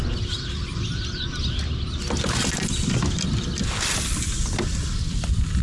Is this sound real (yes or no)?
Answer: yes